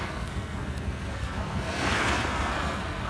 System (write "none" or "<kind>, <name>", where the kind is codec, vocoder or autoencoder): codec, SNAC